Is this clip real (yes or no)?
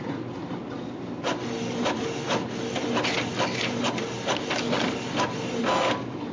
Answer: yes